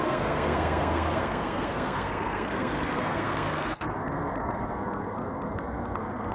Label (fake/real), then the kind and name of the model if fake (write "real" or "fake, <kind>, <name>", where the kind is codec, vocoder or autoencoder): fake, codec, SNAC